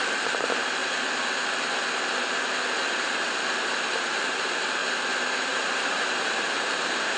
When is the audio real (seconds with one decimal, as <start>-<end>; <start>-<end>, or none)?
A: 0.8-3.6; 4.8-5.5